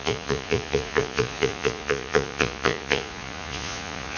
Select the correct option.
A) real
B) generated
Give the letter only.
B